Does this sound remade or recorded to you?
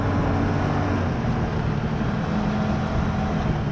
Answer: recorded